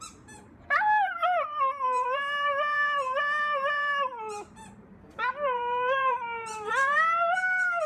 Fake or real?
fake